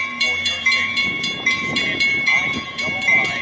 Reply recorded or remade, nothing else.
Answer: remade